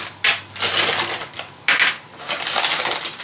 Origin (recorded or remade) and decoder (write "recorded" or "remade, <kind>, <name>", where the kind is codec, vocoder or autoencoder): recorded